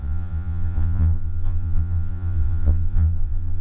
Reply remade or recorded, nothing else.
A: remade